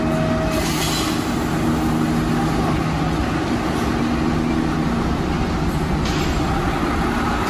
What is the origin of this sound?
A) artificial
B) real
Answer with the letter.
B